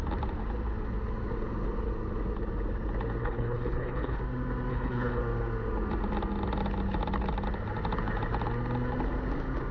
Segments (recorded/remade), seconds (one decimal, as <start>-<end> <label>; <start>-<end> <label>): 0.0-3.2 recorded; 3.2-4.2 remade; 4.2-4.7 recorded; 4.7-5.2 remade; 5.2-9.7 recorded